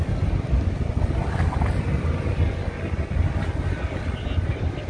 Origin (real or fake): real